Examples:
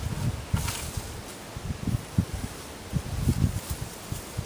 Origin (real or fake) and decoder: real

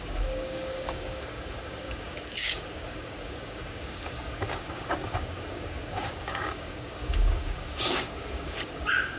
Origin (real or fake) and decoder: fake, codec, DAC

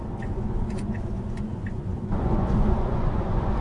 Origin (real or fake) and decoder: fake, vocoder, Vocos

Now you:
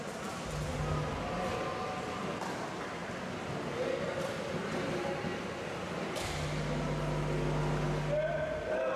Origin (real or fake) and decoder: real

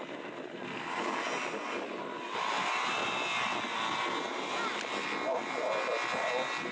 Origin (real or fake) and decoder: real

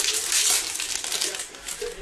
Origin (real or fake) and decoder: real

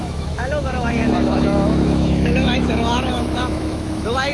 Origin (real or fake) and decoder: fake, autoencoder, DAC-VAE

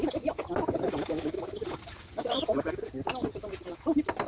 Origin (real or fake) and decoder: real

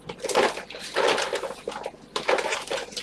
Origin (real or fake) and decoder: real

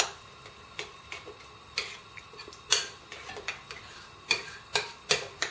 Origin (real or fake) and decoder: real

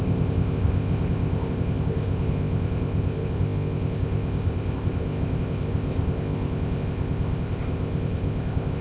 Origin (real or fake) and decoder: fake, codec, ZipCodec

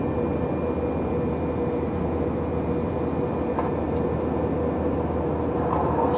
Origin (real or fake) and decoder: real